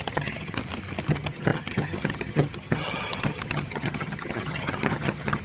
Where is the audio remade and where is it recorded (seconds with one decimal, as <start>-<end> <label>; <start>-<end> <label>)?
0.0-0.6 remade; 0.6-1.1 recorded; 1.1-5.4 remade